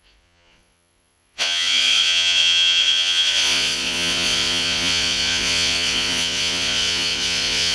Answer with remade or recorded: remade